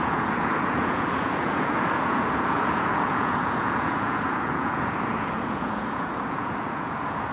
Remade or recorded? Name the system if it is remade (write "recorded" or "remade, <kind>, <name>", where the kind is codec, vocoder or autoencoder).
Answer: remade, vocoder, Vocos